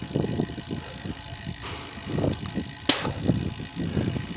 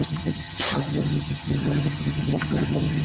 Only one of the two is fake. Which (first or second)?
second